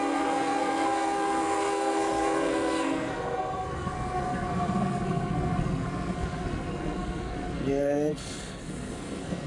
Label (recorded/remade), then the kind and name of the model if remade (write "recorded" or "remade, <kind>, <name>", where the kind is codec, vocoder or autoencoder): remade, codec, SNAC